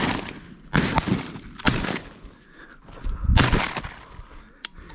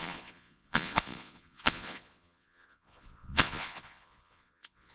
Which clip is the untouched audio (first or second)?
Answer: first